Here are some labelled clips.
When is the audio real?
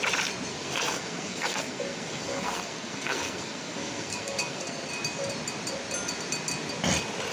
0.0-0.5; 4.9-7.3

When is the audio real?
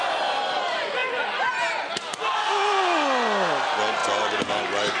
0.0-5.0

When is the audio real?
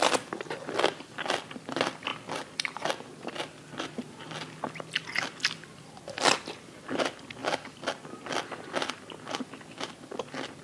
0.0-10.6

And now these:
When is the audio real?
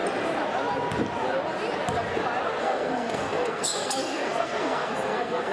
0.0-2.6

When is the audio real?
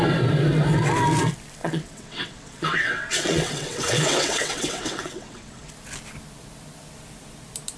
0.0-1.6; 5.7-7.8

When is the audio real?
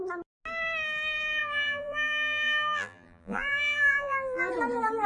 0.0-1.4; 4.5-5.1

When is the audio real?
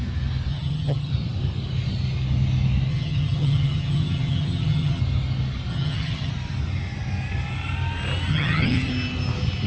0.0-0.5; 1.1-2.9; 5.0-5.7; 6.3-8.3; 8.9-9.7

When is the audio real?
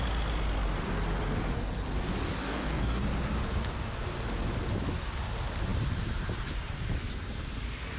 0.0-2.4; 3.0-8.0